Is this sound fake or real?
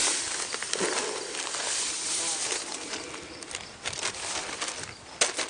real